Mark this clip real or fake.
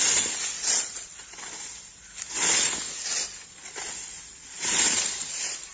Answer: real